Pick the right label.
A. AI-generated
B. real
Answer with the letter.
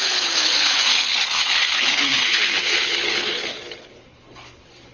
A